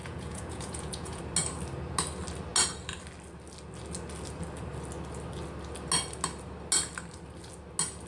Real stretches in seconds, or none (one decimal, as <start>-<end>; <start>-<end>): 1.2-8.1